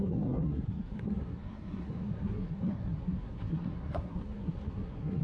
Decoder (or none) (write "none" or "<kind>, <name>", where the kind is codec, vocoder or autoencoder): codec, SNAC